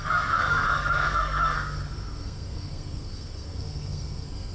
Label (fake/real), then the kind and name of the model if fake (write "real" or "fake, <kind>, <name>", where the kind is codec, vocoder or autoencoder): fake, codec, SNAC